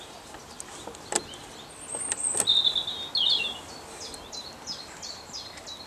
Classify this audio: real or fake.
real